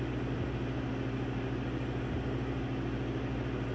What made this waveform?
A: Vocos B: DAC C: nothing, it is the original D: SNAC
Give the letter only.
C